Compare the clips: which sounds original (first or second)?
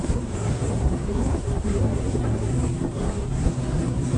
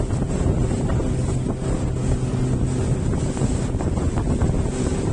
second